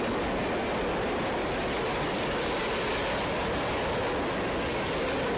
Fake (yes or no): no